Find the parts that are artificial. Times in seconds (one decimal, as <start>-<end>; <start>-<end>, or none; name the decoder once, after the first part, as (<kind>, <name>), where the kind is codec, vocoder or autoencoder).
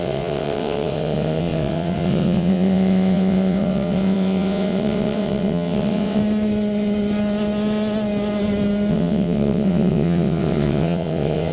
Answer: 0.0-6.2 (vocoder, WaveNeXt); 8.9-11.5